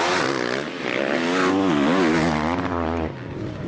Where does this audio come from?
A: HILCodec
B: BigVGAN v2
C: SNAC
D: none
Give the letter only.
D